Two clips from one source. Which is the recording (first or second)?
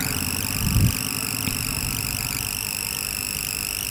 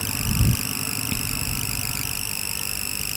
first